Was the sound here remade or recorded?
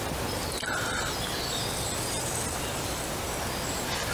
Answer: recorded